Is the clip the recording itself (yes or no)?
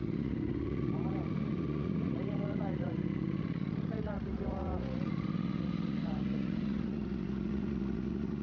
no